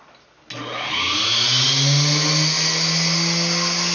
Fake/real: real